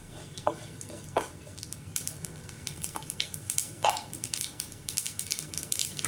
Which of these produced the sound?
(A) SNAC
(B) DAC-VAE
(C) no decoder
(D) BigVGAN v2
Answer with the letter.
A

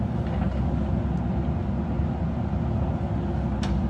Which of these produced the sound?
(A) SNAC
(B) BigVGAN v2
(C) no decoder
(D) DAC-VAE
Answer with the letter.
C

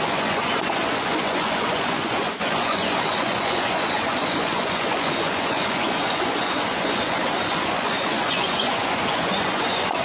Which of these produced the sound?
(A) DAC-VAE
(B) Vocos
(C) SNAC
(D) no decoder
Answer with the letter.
B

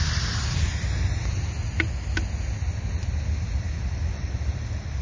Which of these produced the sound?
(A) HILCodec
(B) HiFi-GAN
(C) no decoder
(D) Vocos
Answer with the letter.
C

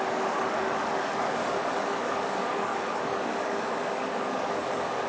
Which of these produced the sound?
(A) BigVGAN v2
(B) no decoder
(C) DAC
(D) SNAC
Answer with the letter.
C